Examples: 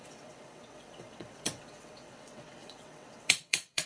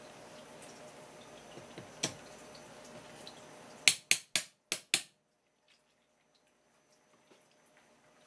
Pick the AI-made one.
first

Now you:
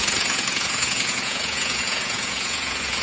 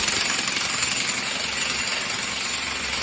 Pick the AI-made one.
first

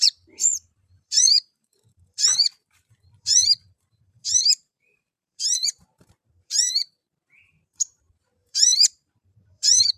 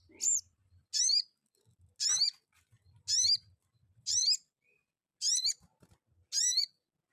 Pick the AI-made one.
first